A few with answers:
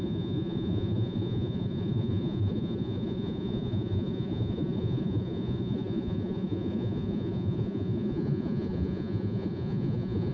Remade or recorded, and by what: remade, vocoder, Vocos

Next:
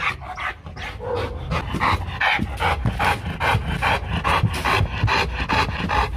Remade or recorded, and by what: recorded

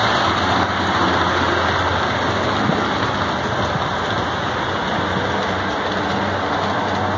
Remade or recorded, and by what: recorded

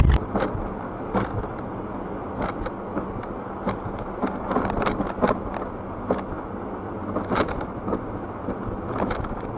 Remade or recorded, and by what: recorded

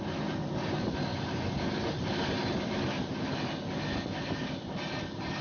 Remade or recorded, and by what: recorded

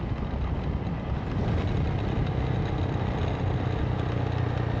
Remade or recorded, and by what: recorded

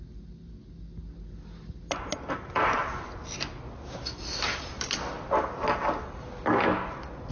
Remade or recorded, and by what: recorded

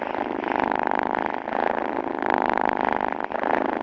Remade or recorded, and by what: recorded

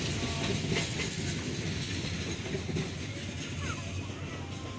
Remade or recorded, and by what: recorded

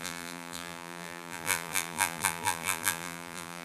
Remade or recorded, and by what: remade, vocoder, BigVGAN v2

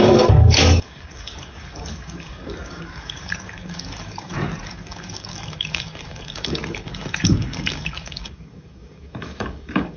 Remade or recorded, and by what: remade, codec, DAC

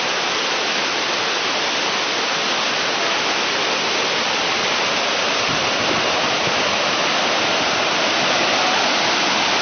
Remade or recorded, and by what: recorded